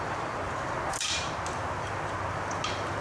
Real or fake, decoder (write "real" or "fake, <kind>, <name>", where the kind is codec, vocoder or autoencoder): real